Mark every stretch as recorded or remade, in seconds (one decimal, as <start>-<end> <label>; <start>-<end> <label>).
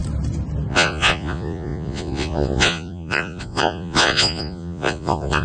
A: 0.0-0.7 recorded; 0.7-5.4 remade